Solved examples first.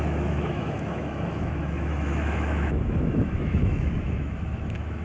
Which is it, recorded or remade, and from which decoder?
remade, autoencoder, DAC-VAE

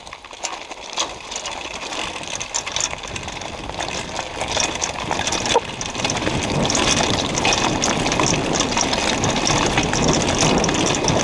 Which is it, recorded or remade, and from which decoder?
recorded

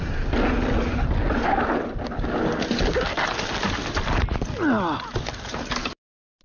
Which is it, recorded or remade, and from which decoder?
recorded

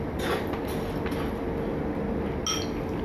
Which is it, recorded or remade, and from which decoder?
recorded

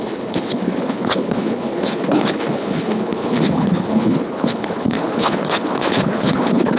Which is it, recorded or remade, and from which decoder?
remade, codec, HILCodec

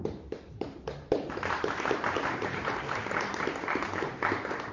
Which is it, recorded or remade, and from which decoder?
remade, vocoder, BigVGAN v2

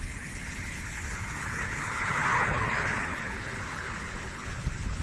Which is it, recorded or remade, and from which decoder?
remade, codec, HILCodec